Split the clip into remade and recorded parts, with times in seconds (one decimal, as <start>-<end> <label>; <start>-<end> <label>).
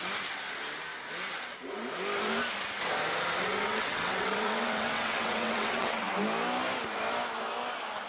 0.0-3.4 recorded; 3.4-6.1 remade; 6.1-8.1 recorded